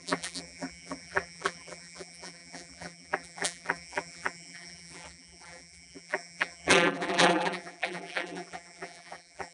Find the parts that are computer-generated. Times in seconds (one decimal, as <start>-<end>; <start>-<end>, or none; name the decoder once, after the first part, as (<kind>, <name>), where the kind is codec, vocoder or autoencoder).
0.0-9.5 (vocoder, BigVGAN v2)